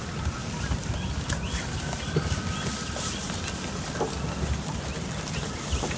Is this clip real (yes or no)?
yes